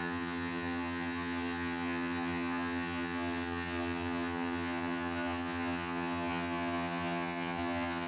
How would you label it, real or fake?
fake